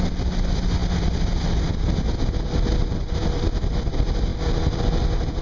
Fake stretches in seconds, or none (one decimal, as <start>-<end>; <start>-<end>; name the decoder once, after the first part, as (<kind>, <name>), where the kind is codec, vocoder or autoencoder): none